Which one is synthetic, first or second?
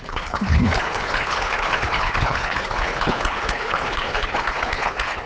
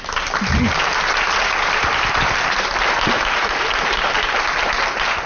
first